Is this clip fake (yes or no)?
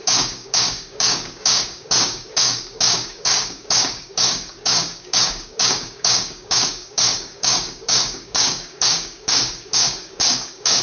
yes